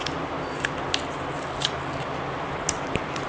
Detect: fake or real real